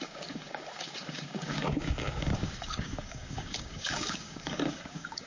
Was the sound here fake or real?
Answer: fake